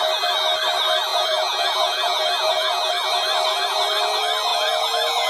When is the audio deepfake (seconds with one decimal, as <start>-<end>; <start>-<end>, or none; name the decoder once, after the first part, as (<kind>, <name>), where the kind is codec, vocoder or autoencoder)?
1.1-2.9 (vocoder, Vocos); 4.5-5.3